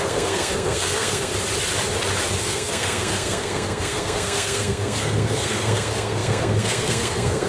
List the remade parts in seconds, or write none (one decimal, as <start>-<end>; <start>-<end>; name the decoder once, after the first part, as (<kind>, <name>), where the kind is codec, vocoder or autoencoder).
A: 0.0-1.3 (codec, SNAC); 2.4-7.5

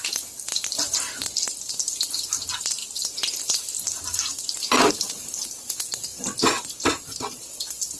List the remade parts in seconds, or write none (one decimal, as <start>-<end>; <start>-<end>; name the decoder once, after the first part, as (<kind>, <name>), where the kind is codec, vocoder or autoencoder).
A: none

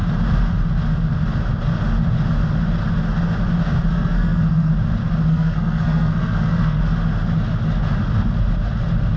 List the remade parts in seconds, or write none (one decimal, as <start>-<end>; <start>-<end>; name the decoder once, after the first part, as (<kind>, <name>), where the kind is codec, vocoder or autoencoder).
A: 3.9-4.7 (codec, SNAC); 5.3-6.8